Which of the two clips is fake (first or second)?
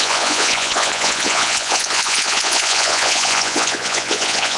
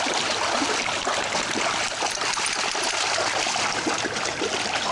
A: first